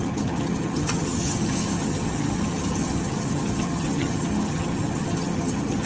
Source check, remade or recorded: remade